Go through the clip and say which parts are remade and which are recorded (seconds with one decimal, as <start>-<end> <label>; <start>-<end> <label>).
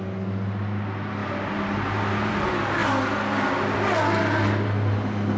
0.0-1.2 recorded; 1.2-2.3 remade; 2.3-5.4 recorded